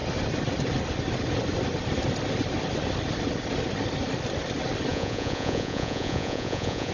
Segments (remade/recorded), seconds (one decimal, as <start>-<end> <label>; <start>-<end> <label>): 0.0-4.9 recorded; 4.9-6.9 remade